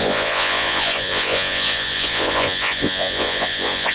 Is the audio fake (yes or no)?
yes